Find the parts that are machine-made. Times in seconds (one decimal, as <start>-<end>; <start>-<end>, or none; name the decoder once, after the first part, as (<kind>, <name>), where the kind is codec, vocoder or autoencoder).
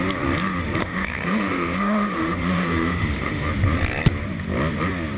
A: 0.8-3.5 (autoencoder, DAC-VAE)